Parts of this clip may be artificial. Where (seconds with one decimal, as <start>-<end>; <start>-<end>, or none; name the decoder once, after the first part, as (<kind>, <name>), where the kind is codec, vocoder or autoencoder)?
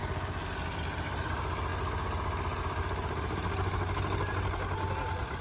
none